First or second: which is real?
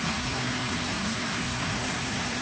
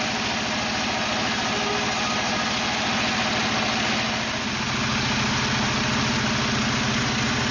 second